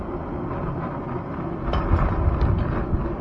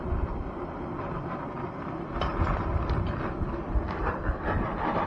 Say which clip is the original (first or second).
first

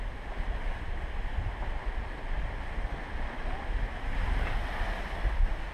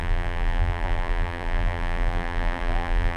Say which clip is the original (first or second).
first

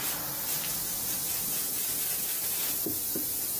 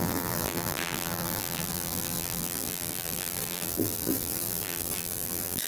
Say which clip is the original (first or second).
first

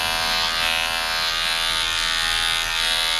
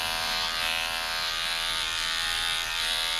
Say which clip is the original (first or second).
first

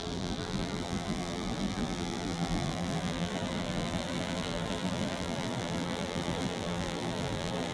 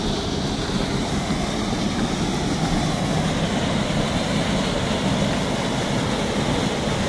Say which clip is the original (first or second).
second